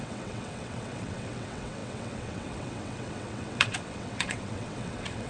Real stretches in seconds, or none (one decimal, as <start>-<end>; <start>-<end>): none